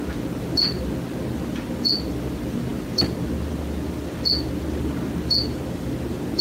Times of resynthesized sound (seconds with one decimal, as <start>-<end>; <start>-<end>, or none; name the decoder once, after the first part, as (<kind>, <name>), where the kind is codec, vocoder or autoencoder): none